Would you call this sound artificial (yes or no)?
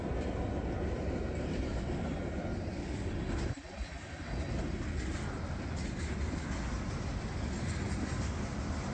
no